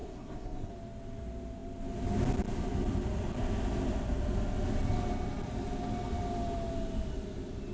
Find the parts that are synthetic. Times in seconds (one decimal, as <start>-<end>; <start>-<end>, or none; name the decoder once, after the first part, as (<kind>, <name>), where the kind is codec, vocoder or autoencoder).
0.0-0.7 (codec, SNAC)